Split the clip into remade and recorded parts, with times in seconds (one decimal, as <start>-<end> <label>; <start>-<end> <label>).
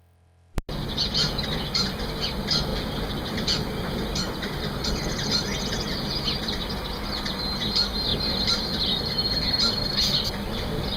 0.0-2.7 recorded; 2.7-4.9 remade; 4.9-8.1 recorded; 8.1-11.0 remade